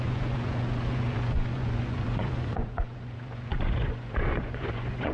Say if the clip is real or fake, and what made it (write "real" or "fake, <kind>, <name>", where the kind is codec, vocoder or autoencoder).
fake, vocoder, Vocos